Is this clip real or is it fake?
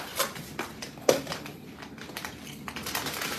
fake